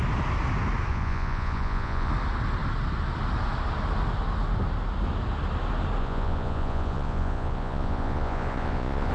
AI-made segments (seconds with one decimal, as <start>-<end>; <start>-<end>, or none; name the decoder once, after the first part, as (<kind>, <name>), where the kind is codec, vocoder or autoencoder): 0.9-2.1 (vocoder, Vocos); 6.0-9.1